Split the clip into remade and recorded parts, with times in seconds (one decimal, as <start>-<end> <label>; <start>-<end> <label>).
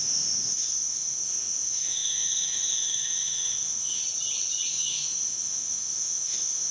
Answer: 0.0-4.0 remade; 4.0-4.7 recorded; 4.7-6.7 remade